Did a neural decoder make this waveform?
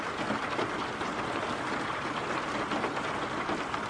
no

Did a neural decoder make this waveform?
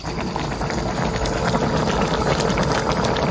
no